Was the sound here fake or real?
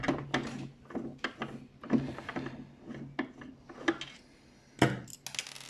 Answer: real